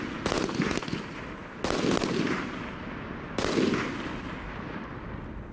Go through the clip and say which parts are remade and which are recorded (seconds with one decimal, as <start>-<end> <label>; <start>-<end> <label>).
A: 0.0-5.5 recorded